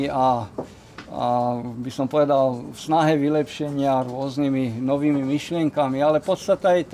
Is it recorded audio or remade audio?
recorded